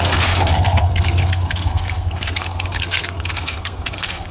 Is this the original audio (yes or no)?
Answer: no